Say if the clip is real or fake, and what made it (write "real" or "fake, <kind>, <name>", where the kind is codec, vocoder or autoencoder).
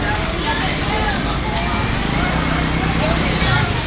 real